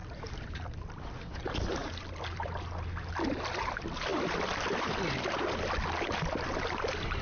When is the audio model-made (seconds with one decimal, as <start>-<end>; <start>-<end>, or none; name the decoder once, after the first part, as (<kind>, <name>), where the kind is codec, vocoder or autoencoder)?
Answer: none